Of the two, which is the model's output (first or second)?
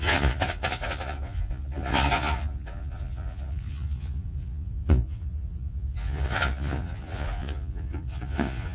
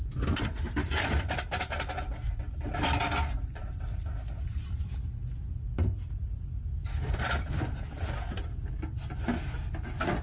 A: first